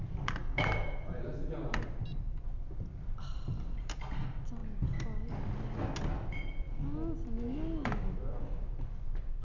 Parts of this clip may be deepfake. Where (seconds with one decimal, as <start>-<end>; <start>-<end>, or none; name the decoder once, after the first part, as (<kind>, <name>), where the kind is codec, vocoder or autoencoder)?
0.4-1.2 (autoencoder, DAC-VAE)